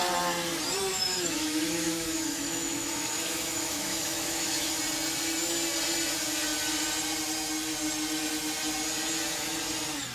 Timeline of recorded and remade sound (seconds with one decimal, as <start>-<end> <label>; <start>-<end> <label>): 0.0-0.9 recorded; 0.9-4.8 remade; 4.8-10.1 recorded